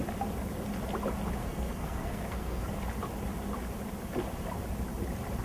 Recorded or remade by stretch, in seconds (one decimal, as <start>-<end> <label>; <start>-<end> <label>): 0.0-1.4 recorded; 1.4-2.7 remade; 2.7-5.4 recorded